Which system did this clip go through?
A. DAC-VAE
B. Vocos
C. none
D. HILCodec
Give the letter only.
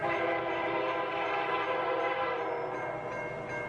C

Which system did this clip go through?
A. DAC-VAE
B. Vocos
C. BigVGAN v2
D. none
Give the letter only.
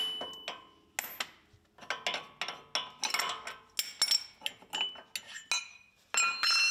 D